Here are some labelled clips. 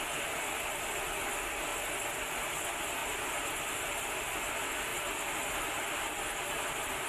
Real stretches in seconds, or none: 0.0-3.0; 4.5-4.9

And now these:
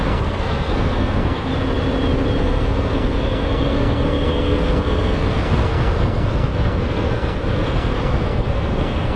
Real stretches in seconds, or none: 1.5-2.4

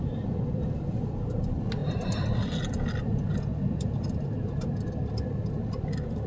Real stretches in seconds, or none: 0.0-1.8; 2.7-6.3